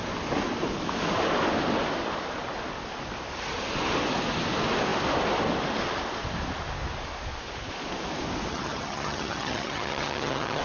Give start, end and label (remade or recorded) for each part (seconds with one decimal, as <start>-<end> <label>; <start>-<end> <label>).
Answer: 0.0-8.5 recorded; 8.5-10.6 remade